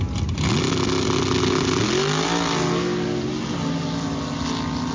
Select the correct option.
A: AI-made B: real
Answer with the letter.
B